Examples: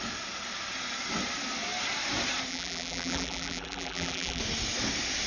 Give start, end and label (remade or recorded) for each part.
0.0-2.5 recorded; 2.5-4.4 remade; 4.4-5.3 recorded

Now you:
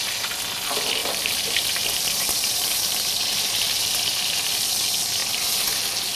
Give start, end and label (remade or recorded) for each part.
0.0-1.0 recorded; 1.0-4.7 remade; 4.7-6.2 recorded

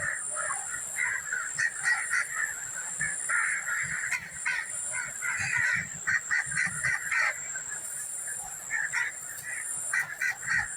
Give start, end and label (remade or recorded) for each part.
0.0-7.4 recorded; 7.4-8.6 remade; 8.6-10.8 recorded

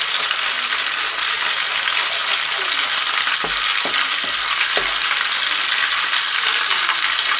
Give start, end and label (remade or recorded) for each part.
0.0-7.4 recorded

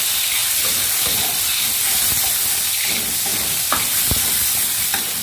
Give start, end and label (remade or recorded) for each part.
0.0-0.4 recorded; 0.4-0.9 remade; 0.9-3.3 recorded; 3.3-5.2 remade

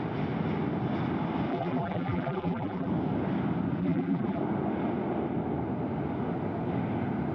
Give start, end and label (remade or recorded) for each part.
0.0-1.5 recorded; 1.5-2.9 remade; 2.9-3.8 recorded; 3.8-4.4 remade; 4.4-7.3 recorded

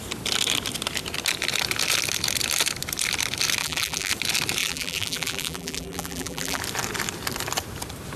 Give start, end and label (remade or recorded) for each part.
0.0-3.6 recorded; 3.6-4.1 remade; 4.1-4.6 recorded; 4.6-6.6 remade; 6.6-8.2 recorded

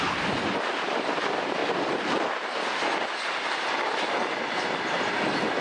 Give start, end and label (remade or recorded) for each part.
0.0-1.6 recorded; 1.6-2.9 remade; 2.9-5.6 recorded